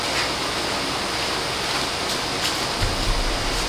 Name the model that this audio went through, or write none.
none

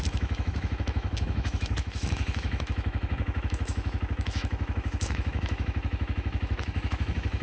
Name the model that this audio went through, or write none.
autoencoder, DAC-VAE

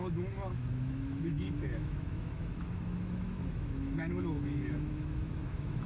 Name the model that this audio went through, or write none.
autoencoder, DAC-VAE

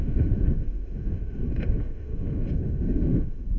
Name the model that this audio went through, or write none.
autoencoder, DAC-VAE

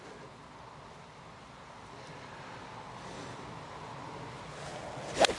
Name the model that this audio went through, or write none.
none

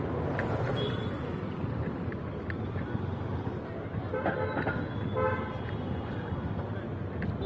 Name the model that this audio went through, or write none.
none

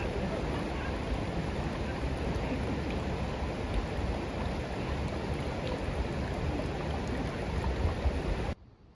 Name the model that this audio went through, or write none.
none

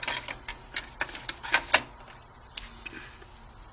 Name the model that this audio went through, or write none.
none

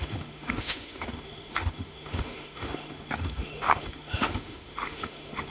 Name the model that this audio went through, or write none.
autoencoder, DAC-VAE